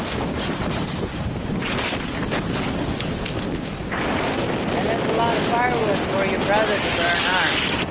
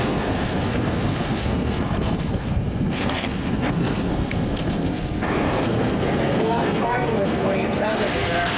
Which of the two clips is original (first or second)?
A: first